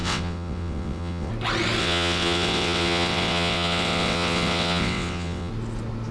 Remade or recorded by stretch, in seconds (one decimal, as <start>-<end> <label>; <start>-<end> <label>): 0.0-1.3 remade; 1.3-1.8 recorded; 1.8-5.5 remade; 5.5-6.1 recorded